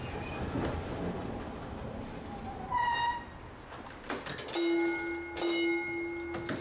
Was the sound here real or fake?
real